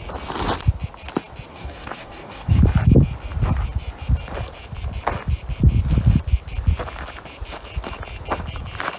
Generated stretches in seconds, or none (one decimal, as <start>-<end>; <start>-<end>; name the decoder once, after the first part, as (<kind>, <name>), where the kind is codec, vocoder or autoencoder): 1.5-2.6 (codec, DAC)